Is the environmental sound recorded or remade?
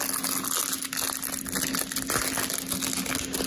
recorded